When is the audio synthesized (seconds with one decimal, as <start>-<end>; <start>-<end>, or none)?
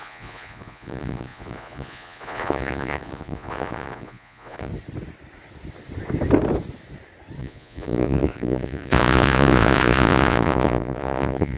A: 0.0-4.7; 7.4-11.6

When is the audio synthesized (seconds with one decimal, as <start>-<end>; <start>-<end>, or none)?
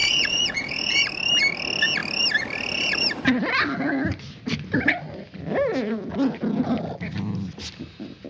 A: 0.0-1.0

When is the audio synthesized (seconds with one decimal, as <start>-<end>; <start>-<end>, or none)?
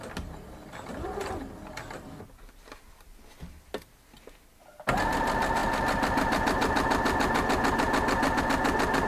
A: none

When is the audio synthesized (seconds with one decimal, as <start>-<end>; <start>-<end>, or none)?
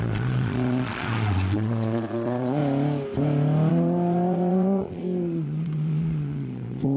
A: 0.0-2.6; 3.7-7.0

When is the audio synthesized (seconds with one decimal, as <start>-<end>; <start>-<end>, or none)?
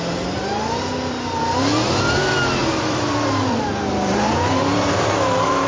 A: 2.6-5.7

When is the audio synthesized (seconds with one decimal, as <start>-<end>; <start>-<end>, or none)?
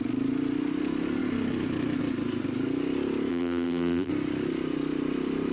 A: 3.3-4.1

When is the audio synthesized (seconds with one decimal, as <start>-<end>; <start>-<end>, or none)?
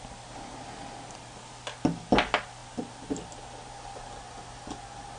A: none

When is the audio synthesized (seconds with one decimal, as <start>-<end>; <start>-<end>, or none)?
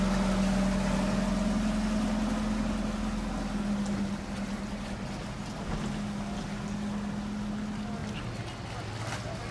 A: none